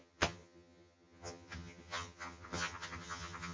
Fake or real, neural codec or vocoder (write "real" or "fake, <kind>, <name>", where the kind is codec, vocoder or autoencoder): fake, vocoder, HiFi-GAN